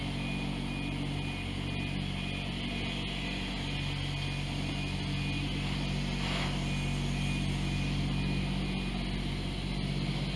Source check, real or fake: real